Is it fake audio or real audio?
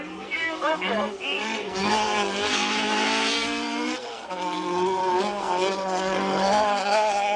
fake